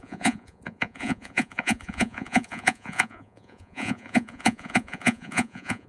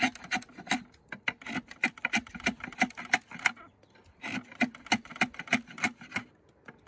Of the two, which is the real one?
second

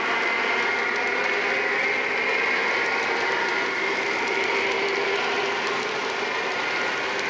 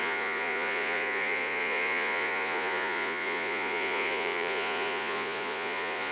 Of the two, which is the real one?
first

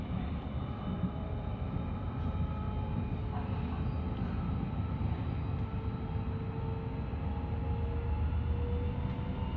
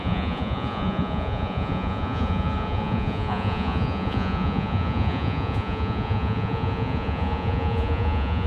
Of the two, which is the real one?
first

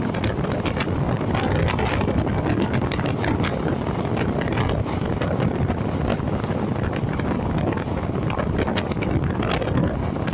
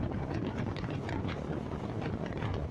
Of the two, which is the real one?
first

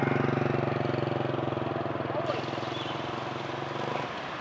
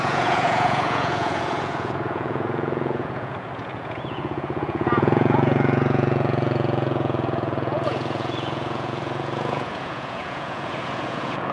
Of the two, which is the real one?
first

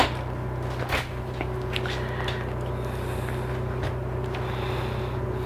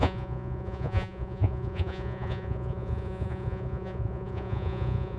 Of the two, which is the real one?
first